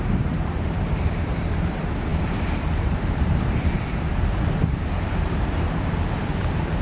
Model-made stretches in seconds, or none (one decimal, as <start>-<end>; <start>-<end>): 0.0-6.8